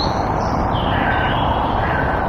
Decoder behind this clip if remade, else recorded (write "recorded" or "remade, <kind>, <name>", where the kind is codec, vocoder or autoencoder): remade, vocoder, BigVGAN v2